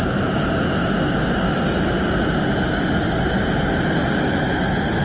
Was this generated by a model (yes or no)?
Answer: no